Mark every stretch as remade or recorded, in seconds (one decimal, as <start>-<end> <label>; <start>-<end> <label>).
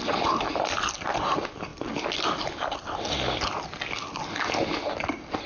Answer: 0.0-5.5 recorded